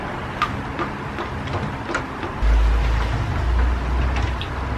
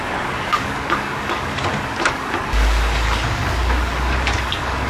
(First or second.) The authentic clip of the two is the first